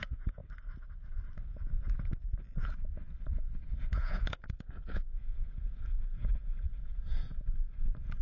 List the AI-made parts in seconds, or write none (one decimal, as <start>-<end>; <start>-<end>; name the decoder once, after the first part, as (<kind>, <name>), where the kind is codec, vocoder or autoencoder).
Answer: 0.0-0.4 (vocoder, Vocos); 3.7-7.3